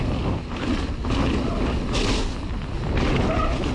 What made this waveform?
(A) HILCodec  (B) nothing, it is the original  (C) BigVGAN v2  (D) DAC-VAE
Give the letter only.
B